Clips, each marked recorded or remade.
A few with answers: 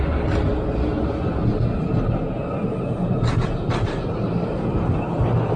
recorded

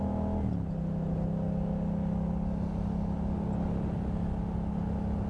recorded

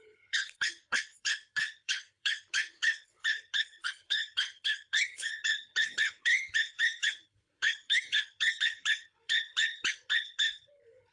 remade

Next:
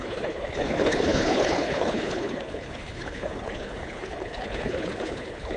remade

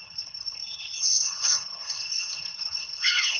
remade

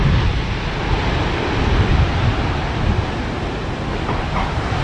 recorded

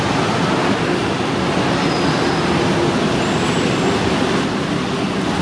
recorded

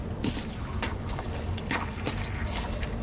recorded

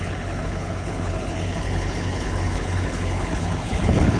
remade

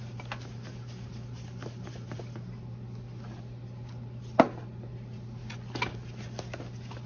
recorded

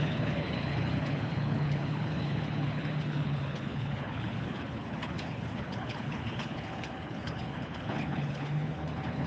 remade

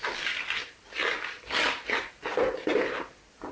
recorded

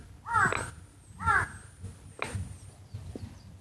recorded